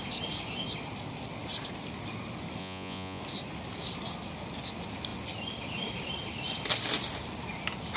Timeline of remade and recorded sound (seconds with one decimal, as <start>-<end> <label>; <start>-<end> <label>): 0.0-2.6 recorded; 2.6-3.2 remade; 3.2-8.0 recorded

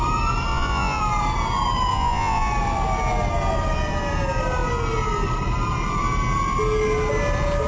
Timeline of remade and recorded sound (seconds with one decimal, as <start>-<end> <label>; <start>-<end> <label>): 0.0-0.5 recorded; 0.5-1.0 remade; 1.0-1.9 recorded; 1.9-2.5 remade; 2.5-7.7 recorded

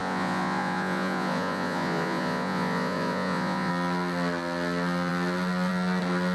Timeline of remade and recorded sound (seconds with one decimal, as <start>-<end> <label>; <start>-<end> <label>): 0.0-3.7 remade; 3.7-6.3 recorded

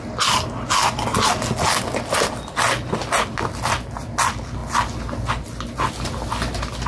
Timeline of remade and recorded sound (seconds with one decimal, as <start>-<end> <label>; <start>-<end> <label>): 0.0-6.9 recorded

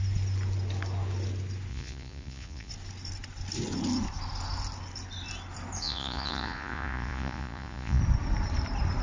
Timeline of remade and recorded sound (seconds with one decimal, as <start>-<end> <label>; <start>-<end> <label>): 0.0-1.7 recorded; 1.7-2.7 remade; 2.7-5.8 recorded; 5.8-8.0 remade; 8.0-9.0 recorded

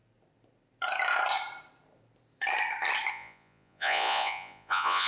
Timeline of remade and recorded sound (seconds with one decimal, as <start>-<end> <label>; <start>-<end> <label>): 0.0-3.1 recorded; 3.1-5.1 remade